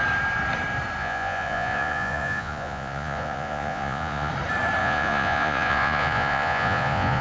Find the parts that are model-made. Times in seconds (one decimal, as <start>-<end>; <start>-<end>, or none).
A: 1.0-4.3; 4.8-7.2